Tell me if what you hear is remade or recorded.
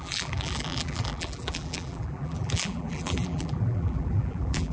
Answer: remade